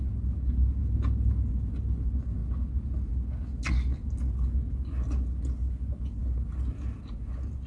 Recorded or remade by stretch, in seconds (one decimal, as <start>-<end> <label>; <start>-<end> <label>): 0.0-7.7 recorded